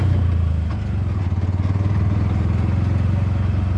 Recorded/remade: recorded